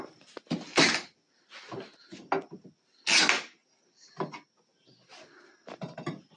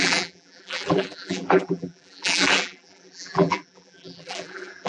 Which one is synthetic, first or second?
second